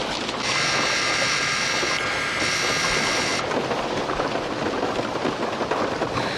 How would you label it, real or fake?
real